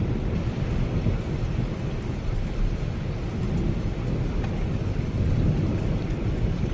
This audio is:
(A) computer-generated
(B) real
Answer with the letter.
B